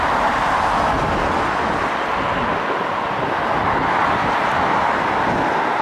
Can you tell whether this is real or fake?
real